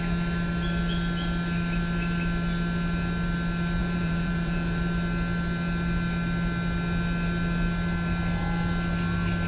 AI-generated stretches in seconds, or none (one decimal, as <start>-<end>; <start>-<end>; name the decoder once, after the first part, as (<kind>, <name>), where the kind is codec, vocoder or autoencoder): 3.8-4.8 (vocoder, Vocos)